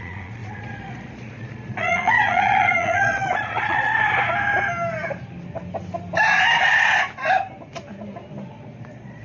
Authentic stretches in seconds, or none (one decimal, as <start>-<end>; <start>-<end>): 3.9-8.5